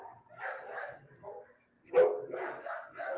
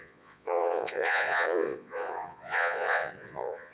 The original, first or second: first